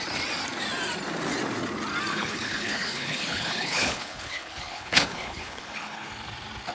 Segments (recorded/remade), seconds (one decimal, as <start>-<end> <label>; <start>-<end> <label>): 0.0-2.1 recorded; 2.1-6.1 remade; 6.1-6.7 recorded